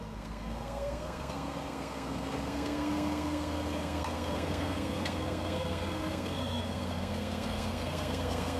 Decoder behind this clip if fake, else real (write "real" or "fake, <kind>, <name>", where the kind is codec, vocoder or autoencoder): fake, codec, SNAC